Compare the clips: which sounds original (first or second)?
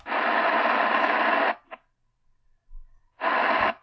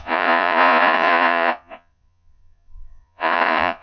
first